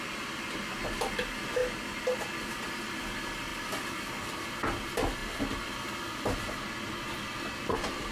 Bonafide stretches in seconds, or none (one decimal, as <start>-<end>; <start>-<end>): 0.0-8.1